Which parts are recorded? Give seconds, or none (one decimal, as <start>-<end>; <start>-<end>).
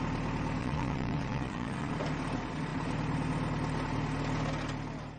0.0-0.6; 1.9-5.2